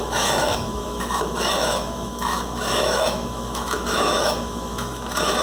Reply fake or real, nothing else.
fake